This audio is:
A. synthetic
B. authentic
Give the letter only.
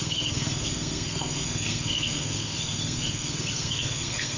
A